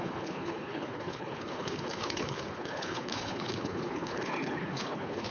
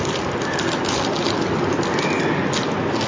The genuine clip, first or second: second